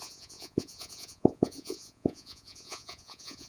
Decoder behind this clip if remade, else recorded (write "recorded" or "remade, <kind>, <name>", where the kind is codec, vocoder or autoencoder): remade, vocoder, Vocos